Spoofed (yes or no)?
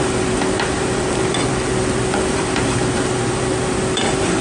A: yes